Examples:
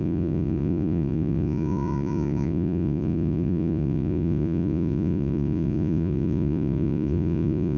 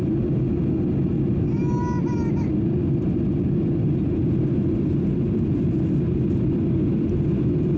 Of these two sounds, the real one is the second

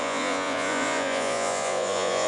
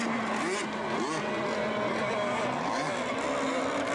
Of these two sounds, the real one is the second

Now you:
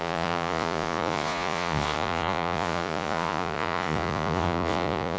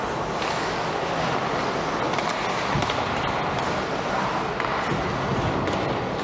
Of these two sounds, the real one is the second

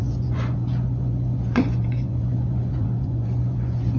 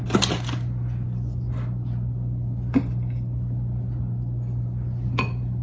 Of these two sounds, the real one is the second